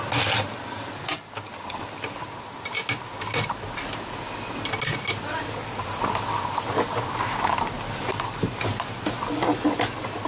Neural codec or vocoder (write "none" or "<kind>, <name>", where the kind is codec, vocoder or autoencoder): none